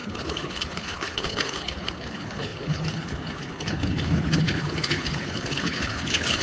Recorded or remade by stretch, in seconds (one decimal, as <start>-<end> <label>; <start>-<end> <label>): 0.0-6.4 remade